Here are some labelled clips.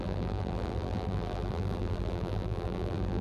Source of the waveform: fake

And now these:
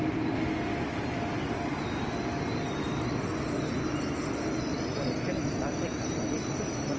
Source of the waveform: real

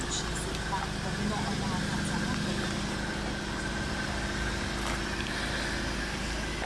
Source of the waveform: real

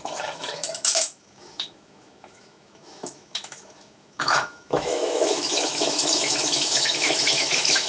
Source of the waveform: fake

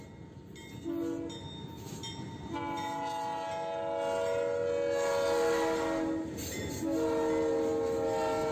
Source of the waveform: real